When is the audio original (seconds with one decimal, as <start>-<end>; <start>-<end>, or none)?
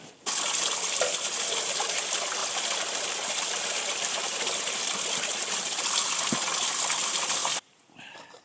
0.0-2.4; 5.8-7.4